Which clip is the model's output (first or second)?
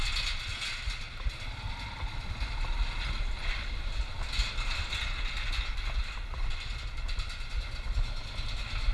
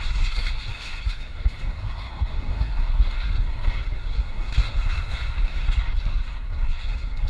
second